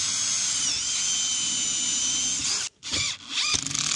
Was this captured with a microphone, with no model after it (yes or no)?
yes